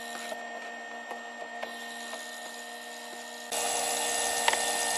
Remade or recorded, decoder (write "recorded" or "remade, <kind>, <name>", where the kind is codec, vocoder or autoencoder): recorded